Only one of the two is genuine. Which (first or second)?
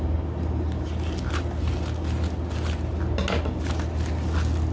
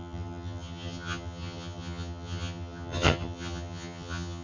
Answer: first